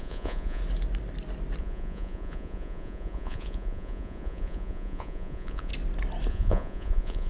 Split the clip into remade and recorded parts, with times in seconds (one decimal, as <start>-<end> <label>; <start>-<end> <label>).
0.0-0.6 remade; 0.6-1.6 recorded; 1.6-5.7 remade; 5.7-6.3 recorded; 6.3-7.3 remade